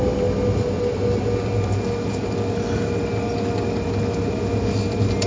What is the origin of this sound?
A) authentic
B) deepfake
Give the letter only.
A